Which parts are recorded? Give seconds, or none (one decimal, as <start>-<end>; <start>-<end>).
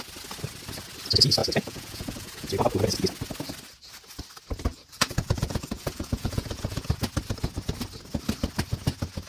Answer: 0.0-1.4; 2.5-4.7; 6.9-9.3